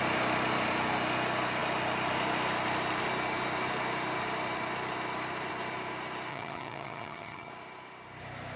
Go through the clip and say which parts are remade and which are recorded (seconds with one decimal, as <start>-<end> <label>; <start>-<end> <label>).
0.0-6.3 recorded; 6.3-7.5 remade; 7.5-8.6 recorded